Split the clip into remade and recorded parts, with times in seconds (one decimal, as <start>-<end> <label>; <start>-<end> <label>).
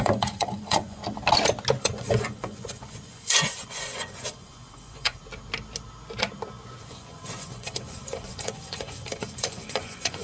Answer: 0.0-1.0 remade; 1.0-1.8 recorded; 1.8-5.2 remade; 5.2-6.8 recorded; 6.8-10.2 remade